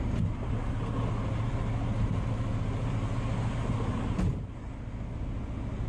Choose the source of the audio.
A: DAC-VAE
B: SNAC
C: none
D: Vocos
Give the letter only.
C